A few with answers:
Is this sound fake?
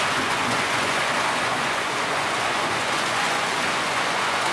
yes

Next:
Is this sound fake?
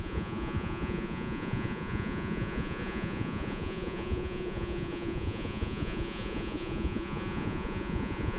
yes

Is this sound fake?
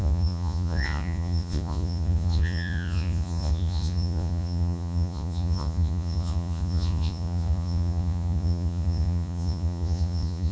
yes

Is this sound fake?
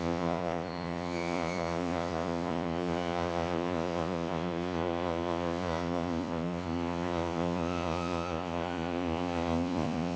yes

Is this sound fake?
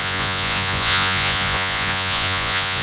yes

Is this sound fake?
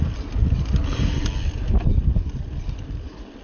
no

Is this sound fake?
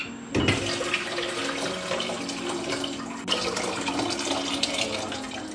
no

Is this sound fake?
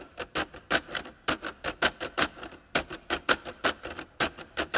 no